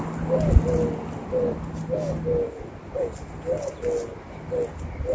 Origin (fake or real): real